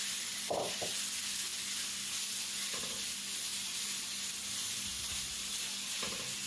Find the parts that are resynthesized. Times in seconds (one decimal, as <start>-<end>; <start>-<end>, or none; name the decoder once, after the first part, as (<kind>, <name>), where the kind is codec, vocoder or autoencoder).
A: 0.0-1.0 (vocoder, BigVGAN v2); 3.5-4.3; 4.9-5.6